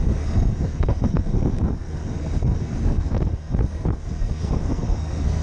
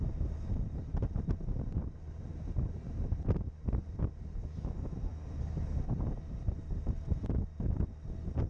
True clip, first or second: second